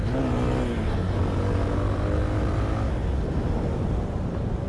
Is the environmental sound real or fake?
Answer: real